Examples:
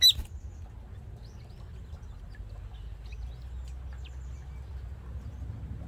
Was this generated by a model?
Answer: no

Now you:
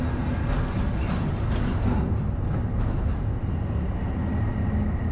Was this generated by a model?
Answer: no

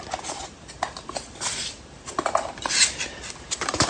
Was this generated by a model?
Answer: no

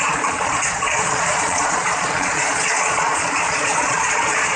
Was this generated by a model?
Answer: yes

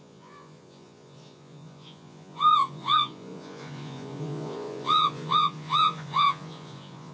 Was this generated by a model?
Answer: yes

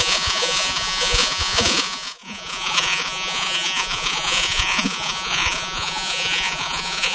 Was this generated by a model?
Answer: yes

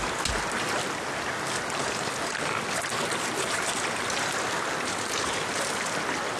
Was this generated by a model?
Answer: no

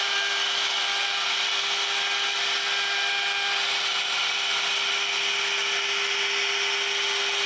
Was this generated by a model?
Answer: no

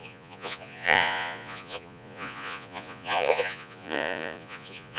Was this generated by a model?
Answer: yes